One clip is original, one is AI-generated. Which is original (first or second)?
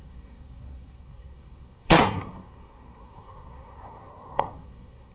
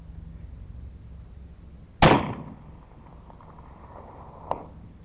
second